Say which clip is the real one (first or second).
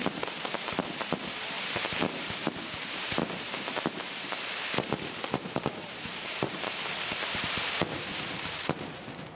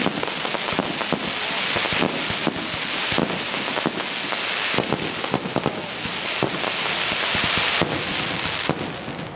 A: second